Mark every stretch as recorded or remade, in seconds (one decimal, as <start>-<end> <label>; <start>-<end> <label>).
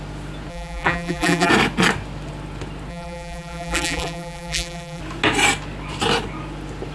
0.0-0.5 recorded; 0.5-1.5 remade; 1.5-2.9 recorded; 2.9-5.0 remade; 5.0-6.9 recorded